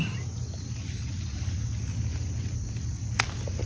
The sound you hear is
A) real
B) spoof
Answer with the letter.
A